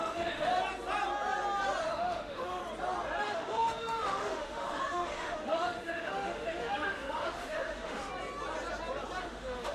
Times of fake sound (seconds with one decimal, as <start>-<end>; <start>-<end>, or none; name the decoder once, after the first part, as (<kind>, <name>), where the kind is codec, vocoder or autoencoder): 0.0-0.5 (autoencoder, DAC-VAE); 1.8-2.6; 3.2-8.1; 9.2-9.7